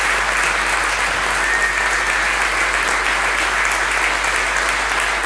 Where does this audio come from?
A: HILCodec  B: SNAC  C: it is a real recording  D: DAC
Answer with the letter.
C